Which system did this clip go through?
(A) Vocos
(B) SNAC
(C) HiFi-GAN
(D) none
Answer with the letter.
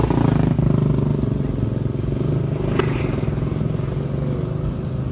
D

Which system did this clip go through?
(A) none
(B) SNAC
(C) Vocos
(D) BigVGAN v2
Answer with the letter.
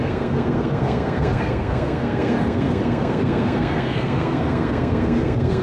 B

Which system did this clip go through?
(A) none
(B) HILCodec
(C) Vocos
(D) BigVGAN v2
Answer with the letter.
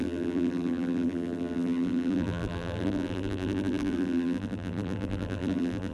D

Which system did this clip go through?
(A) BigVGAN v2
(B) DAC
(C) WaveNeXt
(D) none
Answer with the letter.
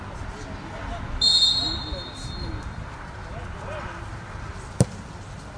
D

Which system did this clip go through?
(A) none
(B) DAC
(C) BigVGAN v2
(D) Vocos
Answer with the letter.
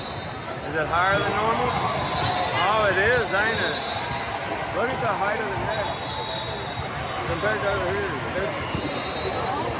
A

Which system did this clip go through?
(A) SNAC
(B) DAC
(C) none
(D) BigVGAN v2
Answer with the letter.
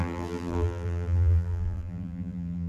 D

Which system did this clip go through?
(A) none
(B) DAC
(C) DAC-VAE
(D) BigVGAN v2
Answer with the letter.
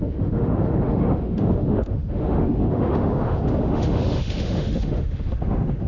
C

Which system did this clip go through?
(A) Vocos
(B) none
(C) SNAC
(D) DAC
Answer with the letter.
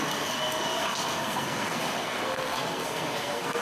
C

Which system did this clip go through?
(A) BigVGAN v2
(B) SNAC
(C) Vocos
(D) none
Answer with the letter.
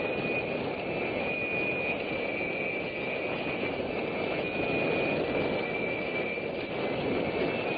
D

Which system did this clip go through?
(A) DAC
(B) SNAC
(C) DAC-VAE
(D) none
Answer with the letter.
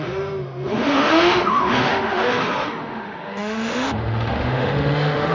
C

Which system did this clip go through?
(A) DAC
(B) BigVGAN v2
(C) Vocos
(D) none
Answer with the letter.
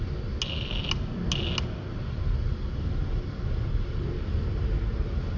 D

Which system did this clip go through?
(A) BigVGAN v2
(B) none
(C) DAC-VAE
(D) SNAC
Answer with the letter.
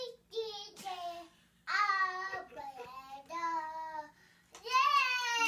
B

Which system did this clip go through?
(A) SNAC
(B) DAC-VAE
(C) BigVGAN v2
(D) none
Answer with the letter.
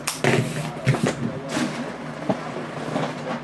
C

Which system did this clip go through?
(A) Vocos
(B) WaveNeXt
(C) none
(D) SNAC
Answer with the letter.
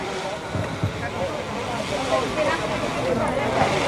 C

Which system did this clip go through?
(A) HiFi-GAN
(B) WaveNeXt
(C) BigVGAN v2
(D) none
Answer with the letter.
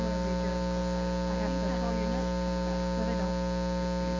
D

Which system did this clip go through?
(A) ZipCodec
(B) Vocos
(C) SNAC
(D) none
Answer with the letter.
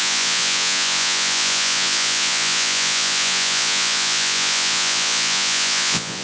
B